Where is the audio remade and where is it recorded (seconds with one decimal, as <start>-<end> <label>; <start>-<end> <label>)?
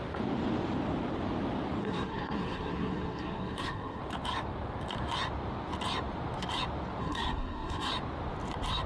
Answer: 0.0-1.8 recorded; 1.8-4.0 remade; 4.0-7.0 recorded; 7.0-7.9 remade; 7.9-8.9 recorded